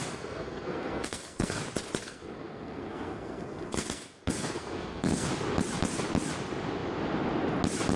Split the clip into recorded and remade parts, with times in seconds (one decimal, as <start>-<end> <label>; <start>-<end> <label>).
0.0-1.6 remade; 1.6-2.0 recorded; 2.0-5.3 remade; 5.3-8.0 recorded